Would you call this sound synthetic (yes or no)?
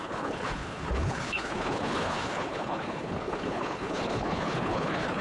yes